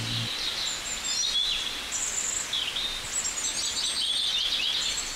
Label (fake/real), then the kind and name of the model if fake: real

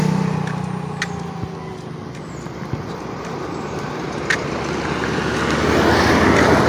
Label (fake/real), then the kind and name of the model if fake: real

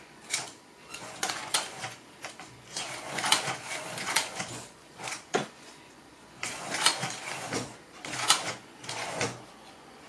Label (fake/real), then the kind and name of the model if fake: fake, vocoder, Vocos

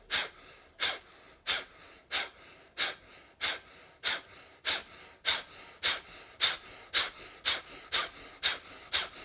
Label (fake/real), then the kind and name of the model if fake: real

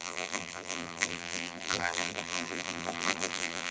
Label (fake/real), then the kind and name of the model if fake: fake, vocoder, BigVGAN v2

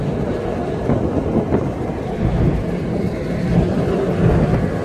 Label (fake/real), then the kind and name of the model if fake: real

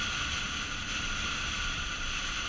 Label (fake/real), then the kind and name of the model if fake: real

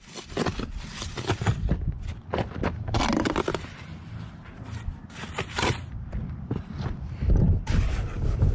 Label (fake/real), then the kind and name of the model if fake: real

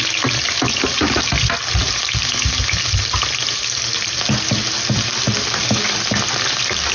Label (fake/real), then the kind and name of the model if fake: real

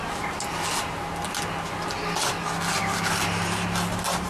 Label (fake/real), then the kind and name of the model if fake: real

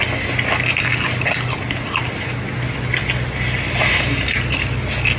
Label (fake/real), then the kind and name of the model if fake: real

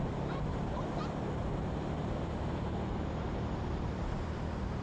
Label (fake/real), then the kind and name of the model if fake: fake, vocoder, BigVGAN v2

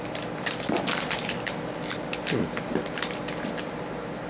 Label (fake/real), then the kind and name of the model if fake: real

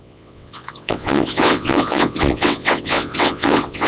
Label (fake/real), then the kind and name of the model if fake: fake, vocoder, WaveNeXt